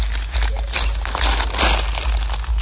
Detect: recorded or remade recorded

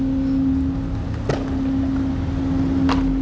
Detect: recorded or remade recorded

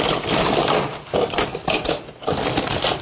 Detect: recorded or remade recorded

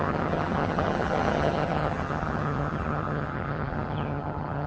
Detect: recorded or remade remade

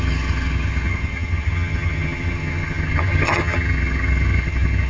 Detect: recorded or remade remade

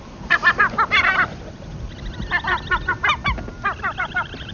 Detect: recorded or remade recorded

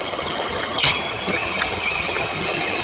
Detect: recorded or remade remade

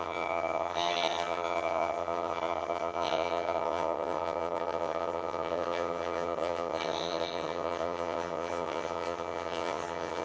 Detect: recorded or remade remade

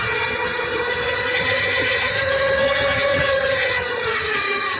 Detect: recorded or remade remade